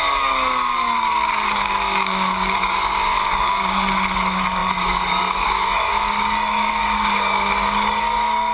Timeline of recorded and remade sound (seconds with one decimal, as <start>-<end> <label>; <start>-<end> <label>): 0.0-8.5 remade